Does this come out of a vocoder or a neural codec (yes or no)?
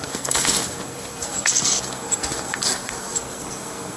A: yes